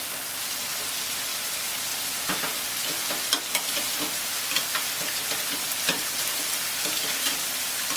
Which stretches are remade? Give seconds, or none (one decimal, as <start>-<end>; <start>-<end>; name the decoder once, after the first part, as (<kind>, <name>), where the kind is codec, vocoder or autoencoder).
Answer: none